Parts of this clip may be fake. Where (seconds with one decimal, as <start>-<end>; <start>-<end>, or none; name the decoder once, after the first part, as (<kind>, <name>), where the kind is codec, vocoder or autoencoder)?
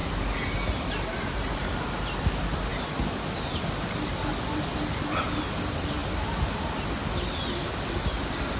none